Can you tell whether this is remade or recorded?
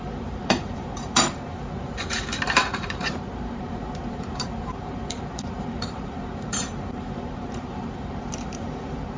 remade